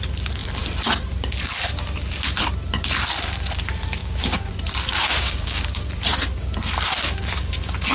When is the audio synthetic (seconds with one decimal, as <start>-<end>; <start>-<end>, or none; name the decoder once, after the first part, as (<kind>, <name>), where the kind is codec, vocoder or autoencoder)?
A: 4.0-4.5 (codec, DAC); 4.9-5.9